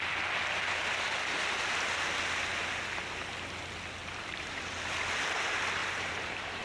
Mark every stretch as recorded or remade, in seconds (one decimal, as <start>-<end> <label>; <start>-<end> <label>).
0.0-4.0 recorded; 4.0-4.6 remade; 4.6-5.8 recorded; 5.8-6.6 remade